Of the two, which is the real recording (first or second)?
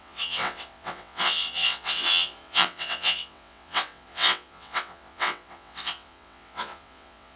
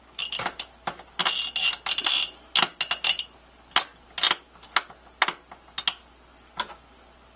second